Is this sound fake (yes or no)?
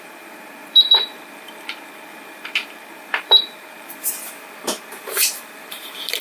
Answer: yes